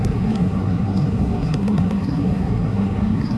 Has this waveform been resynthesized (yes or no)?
yes